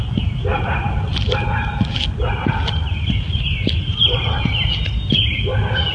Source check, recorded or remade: recorded